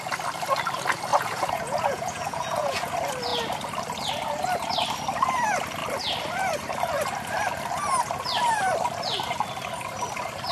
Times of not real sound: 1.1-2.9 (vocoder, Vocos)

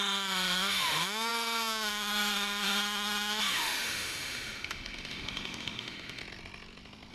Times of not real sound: 0.0-6.2 (autoencoder, DAC-VAE)